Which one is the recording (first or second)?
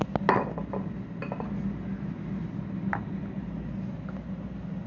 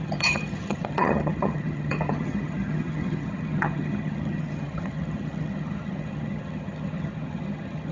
first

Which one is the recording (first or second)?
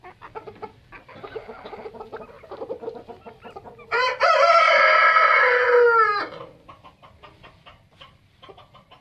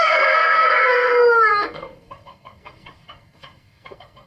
first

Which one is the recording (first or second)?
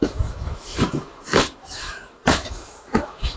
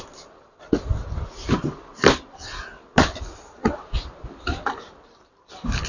second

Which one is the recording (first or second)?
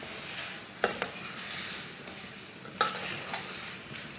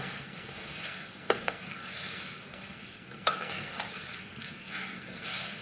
first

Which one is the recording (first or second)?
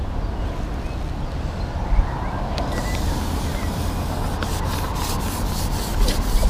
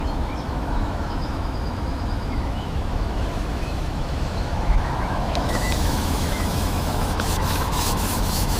first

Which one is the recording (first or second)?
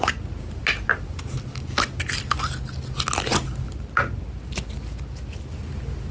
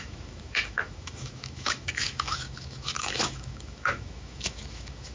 first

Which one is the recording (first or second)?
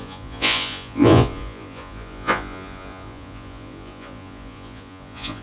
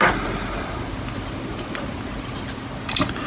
second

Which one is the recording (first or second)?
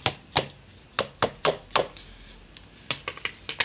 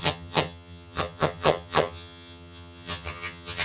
first